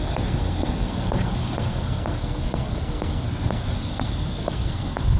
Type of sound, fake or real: fake